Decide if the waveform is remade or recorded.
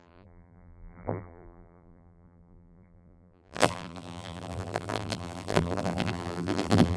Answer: remade